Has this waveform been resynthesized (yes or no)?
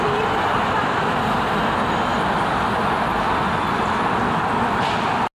no